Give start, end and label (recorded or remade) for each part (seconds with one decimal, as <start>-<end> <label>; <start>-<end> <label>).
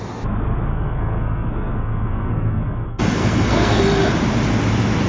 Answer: 0.0-0.7 recorded; 0.7-3.8 remade; 3.8-5.1 recorded